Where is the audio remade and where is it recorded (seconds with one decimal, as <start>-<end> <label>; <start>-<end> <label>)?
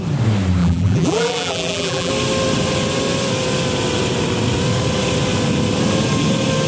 0.0-0.6 recorded; 0.6-2.1 remade; 2.1-6.7 recorded